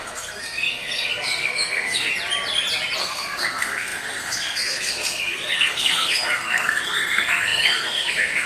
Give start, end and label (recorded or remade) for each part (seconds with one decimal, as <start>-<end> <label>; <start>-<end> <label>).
0.0-2.1 remade; 2.1-3.0 recorded; 3.0-8.5 remade